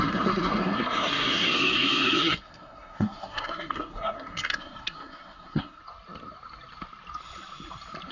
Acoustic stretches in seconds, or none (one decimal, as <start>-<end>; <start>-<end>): 5.8-8.1

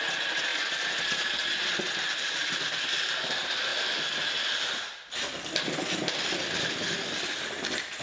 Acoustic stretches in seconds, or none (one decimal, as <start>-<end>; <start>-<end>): 0.0-0.5; 1.9-8.0

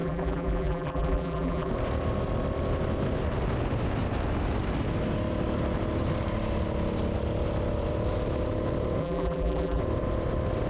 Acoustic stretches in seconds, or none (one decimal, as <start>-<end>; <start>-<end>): 1.7-9.0; 9.8-10.7

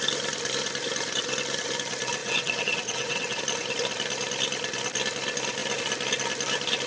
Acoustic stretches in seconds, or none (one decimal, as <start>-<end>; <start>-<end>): 0.0-2.2; 3.4-6.9

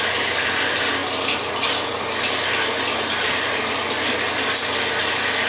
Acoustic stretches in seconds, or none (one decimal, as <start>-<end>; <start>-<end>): 0.0-5.5